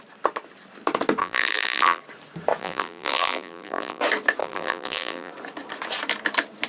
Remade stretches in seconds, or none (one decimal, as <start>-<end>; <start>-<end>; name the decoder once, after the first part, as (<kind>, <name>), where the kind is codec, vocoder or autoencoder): 1.2-2.0 (vocoder, BigVGAN v2); 2.6-4.0; 4.4-5.3